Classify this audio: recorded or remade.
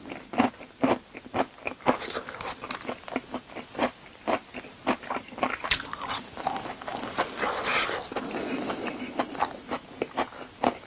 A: recorded